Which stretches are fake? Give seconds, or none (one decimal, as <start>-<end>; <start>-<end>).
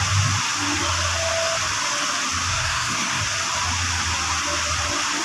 2.5-3.2